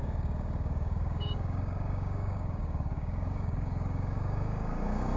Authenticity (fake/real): fake